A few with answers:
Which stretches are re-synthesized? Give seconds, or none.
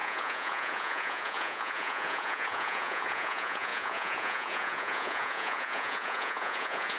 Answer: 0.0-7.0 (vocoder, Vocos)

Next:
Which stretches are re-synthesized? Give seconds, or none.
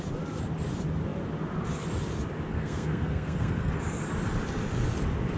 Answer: 2.5-3.7 (codec, SNAC)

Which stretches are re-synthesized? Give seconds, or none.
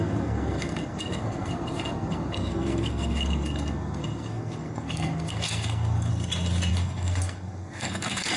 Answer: 0.0-6.1 (codec, SNAC); 6.7-8.4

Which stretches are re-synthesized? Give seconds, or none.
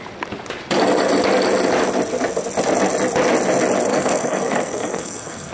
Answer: 3.9-5.5 (codec, SNAC)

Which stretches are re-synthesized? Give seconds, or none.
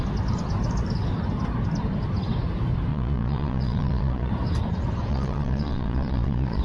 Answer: 2.9-4.3 (vocoder, Vocos); 5.1-6.6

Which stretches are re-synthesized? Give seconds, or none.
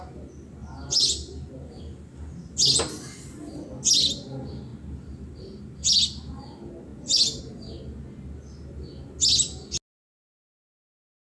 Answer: none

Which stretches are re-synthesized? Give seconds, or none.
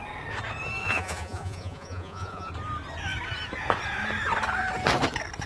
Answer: 0.8-2.5 (vocoder, Vocos)